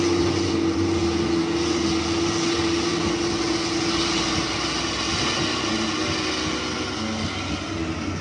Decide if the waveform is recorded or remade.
recorded